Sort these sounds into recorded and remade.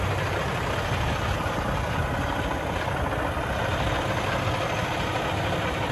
recorded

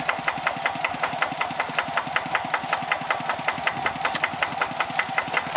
recorded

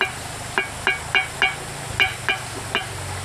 recorded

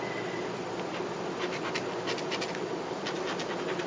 recorded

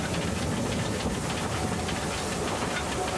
recorded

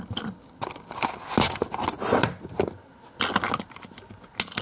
recorded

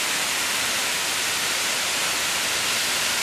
recorded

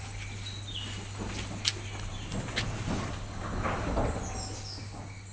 recorded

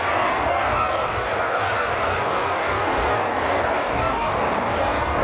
remade